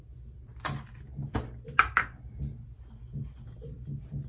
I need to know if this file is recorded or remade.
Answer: recorded